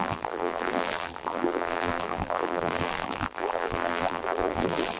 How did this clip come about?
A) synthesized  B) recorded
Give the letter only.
A